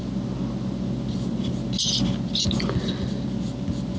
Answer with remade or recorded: recorded